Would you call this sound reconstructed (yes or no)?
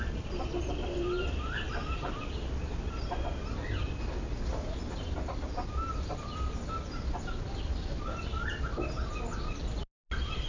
no